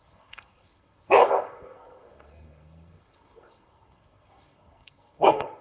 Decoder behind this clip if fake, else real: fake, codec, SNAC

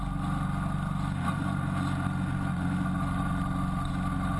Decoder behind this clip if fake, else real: real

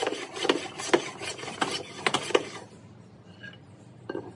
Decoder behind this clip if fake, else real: real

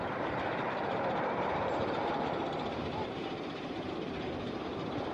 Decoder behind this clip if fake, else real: fake, vocoder, BigVGAN v2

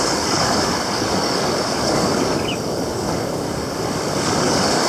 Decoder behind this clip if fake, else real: fake, codec, DAC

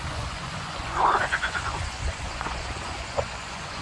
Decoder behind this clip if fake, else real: fake, vocoder, Vocos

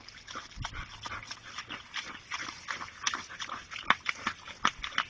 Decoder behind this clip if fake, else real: real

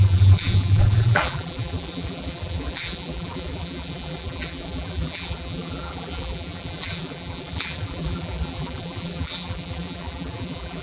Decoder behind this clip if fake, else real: fake, vocoder, BigVGAN v2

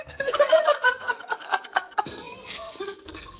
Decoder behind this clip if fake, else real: fake, codec, SNAC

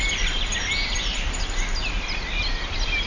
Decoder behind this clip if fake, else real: real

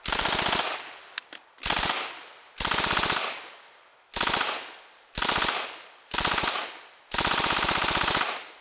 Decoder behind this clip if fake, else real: real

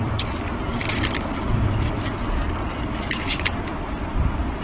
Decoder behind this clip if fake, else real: fake, vocoder, BigVGAN v2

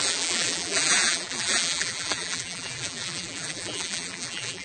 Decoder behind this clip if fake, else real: fake, vocoder, BigVGAN v2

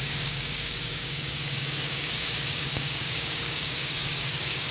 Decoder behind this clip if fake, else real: fake, codec, DAC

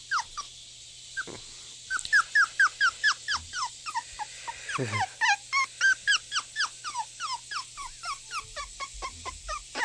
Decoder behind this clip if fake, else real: real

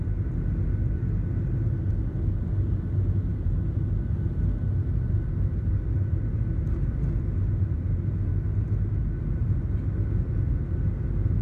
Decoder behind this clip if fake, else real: real